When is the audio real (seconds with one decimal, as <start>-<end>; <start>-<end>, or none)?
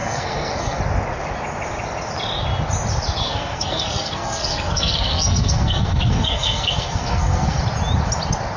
0.8-3.2; 7.6-8.6